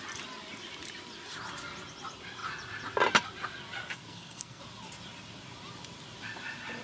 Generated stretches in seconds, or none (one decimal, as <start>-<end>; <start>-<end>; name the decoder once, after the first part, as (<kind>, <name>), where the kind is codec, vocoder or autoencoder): 3.8-4.6 (codec, SNAC)